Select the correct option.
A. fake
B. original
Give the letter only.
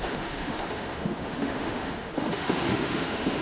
A